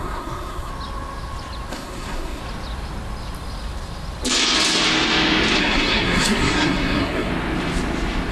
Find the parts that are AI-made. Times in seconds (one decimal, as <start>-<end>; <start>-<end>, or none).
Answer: 0.0-0.7; 1.7-2.4; 5.6-7.3